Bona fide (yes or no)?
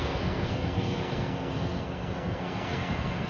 no